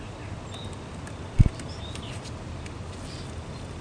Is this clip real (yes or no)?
yes